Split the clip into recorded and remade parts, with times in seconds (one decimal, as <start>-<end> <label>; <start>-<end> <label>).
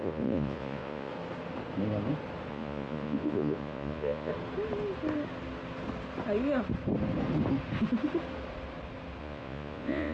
0.0-1.1 remade; 1.1-2.5 recorded; 2.5-4.3 remade; 4.3-9.2 recorded; 9.2-10.1 remade